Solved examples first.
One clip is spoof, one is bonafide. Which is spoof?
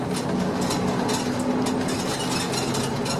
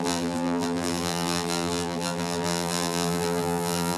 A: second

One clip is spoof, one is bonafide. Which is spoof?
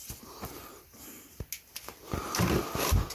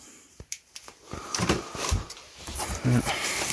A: second